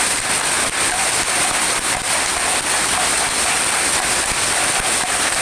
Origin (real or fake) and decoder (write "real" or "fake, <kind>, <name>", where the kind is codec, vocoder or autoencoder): real